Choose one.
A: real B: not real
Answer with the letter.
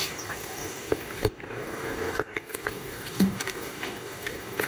B